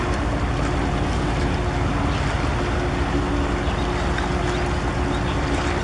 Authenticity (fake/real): real